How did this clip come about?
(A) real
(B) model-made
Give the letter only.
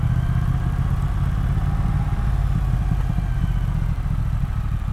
A